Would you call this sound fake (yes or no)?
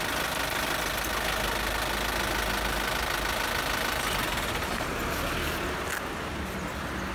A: no